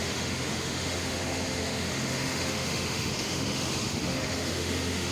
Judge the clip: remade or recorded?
remade